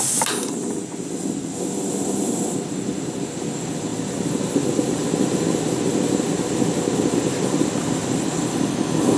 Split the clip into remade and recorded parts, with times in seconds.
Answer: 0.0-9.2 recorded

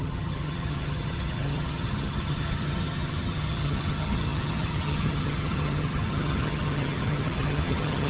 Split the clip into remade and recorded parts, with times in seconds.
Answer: 0.0-8.1 remade

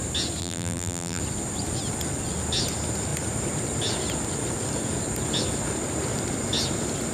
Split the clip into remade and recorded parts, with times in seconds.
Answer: 0.0-0.4 recorded; 0.4-1.2 remade; 1.2-7.1 recorded

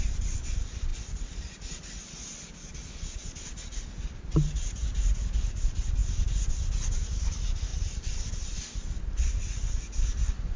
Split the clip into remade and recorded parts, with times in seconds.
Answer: 0.0-7.7 recorded; 7.7-8.3 remade; 8.3-10.6 recorded

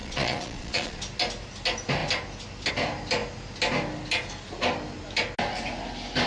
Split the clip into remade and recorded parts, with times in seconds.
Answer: 0.0-1.0 remade; 1.0-6.3 recorded